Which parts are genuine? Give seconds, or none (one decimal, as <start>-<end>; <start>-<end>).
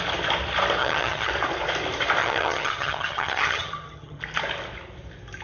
0.0-0.8; 1.3-2.2; 4.2-5.4